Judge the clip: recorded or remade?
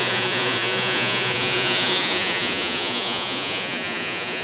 remade